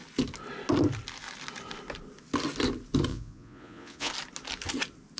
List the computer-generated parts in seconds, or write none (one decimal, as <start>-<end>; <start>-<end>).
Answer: 3.1-4.1